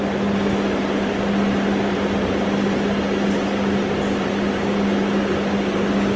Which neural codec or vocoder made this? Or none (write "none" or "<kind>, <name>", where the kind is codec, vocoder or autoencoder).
none